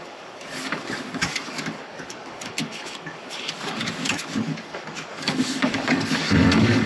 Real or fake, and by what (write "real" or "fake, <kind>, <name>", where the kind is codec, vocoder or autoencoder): fake, codec, DAC